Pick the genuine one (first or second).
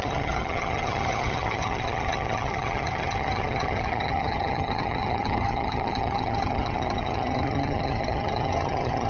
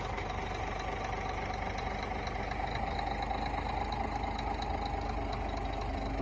second